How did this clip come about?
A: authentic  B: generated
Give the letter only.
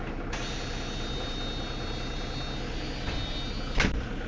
A